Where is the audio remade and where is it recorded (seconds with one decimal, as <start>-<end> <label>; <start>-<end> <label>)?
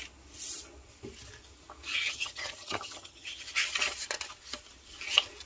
0.0-1.9 recorded; 1.9-3.7 remade; 3.7-5.5 recorded